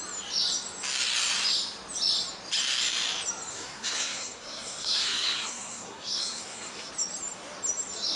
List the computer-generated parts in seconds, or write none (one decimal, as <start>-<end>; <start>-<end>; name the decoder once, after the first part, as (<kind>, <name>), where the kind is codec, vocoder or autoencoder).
3.5-6.9 (codec, SNAC)